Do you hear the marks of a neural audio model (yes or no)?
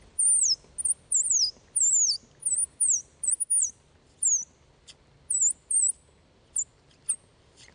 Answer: no